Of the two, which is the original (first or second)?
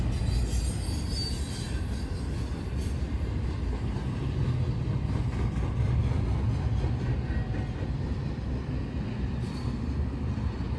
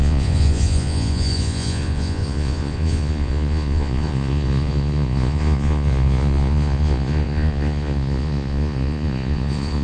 first